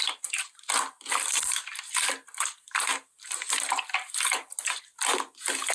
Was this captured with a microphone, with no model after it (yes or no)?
yes